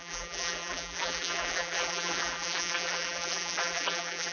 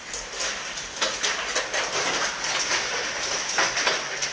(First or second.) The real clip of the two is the second